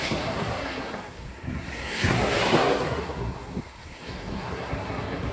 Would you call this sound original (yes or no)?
no